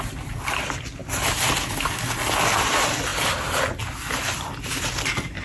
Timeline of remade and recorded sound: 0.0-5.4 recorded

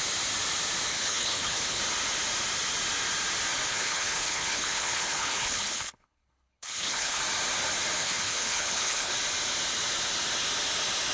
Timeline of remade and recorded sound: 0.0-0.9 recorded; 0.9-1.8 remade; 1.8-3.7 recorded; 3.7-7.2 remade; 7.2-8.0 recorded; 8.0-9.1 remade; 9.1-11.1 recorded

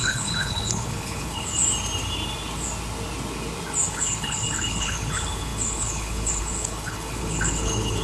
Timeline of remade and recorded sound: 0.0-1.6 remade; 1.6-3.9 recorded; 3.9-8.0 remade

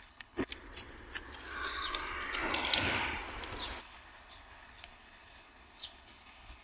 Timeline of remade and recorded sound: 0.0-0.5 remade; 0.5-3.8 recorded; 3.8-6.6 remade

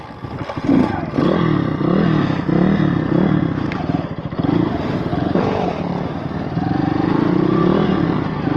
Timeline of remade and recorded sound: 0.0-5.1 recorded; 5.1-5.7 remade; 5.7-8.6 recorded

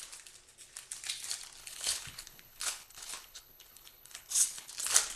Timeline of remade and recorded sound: 0.0-1.6 recorded; 1.6-4.7 remade; 4.7-5.2 recorded

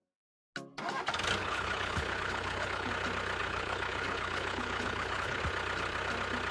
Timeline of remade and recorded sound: 0.0-1.4 recorded; 1.4-2.9 remade; 2.9-3.4 recorded; 3.4-5.4 remade; 5.4-6.5 recorded

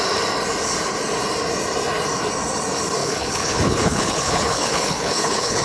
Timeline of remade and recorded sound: 0.0-3.0 recorded; 3.0-5.6 remade